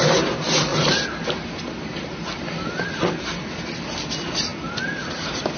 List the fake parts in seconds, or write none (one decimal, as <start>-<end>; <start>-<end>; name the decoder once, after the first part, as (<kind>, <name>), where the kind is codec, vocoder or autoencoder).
none